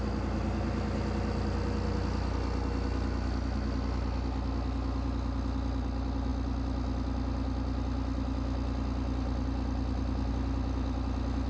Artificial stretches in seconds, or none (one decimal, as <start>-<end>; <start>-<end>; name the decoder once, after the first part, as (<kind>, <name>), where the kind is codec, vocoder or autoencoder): none